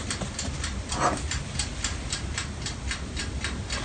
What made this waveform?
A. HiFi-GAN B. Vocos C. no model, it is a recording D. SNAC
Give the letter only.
C